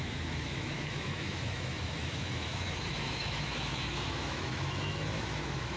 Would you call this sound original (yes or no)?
no